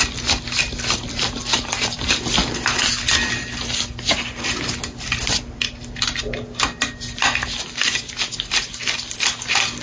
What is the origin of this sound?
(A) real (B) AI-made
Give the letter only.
A